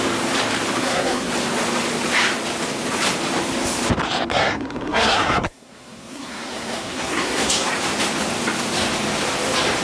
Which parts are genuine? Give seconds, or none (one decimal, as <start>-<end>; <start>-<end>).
0.0-0.8; 1.3-4.3; 7.7-9.8